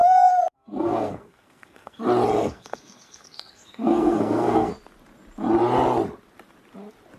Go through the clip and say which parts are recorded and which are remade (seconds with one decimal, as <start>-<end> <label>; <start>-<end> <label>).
0.0-2.0 remade; 2.0-2.4 recorded; 2.4-4.7 remade; 4.7-7.2 recorded